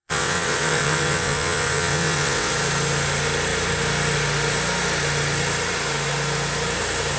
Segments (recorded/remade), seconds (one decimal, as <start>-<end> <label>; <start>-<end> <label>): 0.0-2.5 remade; 2.5-7.2 recorded

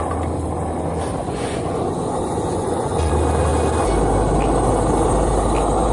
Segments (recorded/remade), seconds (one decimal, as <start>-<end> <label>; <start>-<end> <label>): 0.0-1.2 recorded; 1.2-3.1 remade; 3.1-5.9 recorded

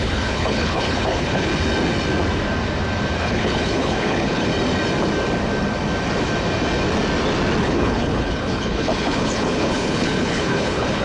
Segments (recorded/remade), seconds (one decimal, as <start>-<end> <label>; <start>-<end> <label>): 0.0-1.5 remade; 1.5-3.2 recorded; 3.2-4.5 remade; 4.5-7.6 recorded; 7.6-11.0 remade

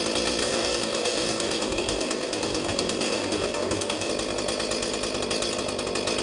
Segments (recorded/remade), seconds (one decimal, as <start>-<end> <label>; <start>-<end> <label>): 0.0-0.4 recorded; 0.4-4.1 remade; 4.1-6.2 recorded

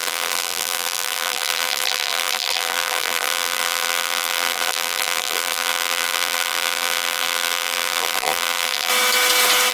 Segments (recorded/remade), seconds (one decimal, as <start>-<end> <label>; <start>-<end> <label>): 0.0-8.9 remade; 8.9-9.7 recorded